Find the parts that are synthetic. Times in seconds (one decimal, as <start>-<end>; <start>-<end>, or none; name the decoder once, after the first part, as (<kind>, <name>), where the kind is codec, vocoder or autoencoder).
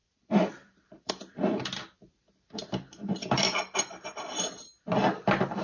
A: 0.0-5.6 (vocoder, BigVGAN v2)